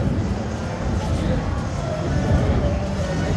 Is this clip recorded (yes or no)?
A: yes